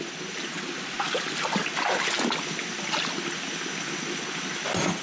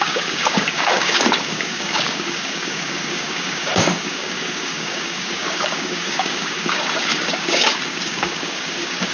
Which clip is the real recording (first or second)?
first